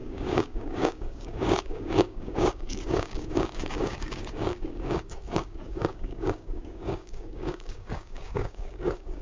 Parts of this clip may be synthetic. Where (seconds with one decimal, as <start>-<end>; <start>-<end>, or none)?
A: 0.0-9.2